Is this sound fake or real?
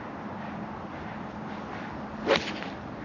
real